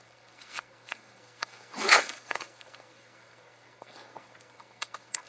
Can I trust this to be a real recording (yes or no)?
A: no